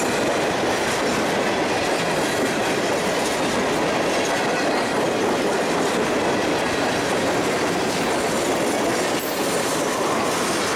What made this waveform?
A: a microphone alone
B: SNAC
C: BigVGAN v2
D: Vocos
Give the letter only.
A